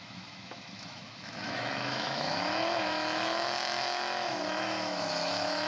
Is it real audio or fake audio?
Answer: fake